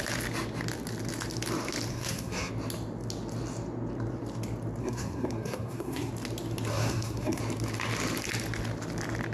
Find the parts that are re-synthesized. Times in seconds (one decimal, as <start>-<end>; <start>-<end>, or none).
1.9-2.5; 4.8-6.1; 6.7-7.4